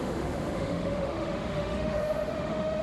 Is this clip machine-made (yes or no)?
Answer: yes